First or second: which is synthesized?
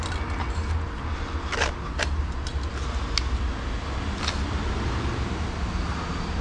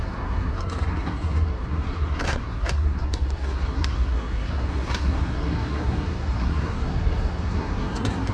second